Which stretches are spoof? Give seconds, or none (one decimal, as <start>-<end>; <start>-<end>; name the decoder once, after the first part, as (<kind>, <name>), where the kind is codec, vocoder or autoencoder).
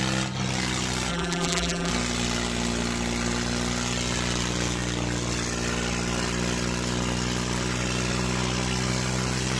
1.1-1.9 (vocoder, BigVGAN v2)